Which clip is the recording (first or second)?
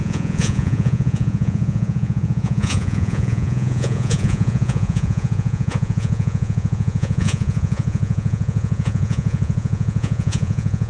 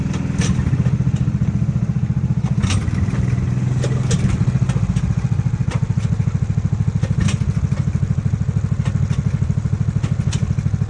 second